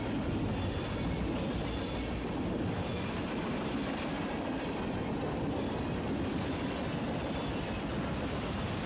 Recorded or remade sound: recorded